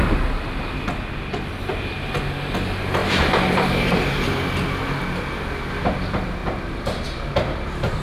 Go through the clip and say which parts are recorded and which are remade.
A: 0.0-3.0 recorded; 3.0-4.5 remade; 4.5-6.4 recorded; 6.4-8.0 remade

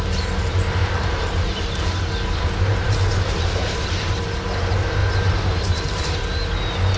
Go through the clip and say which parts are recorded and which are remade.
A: 0.0-0.8 recorded; 0.8-2.1 remade; 2.1-2.7 recorded; 2.7-4.2 remade; 4.2-5.0 recorded; 5.0-6.0 remade; 6.0-7.0 recorded